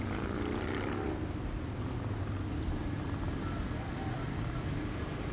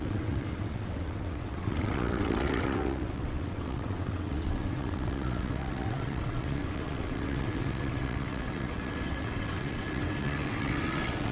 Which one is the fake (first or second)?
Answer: second